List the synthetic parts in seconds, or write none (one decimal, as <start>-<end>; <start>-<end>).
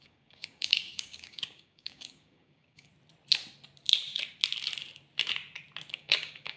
0.0-2.9; 5.9-6.6